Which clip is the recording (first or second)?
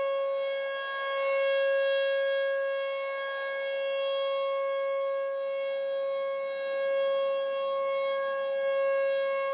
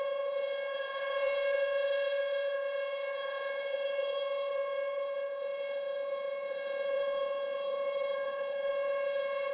first